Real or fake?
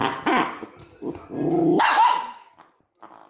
real